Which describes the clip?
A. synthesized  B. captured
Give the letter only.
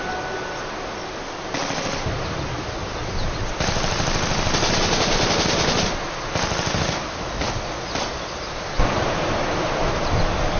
B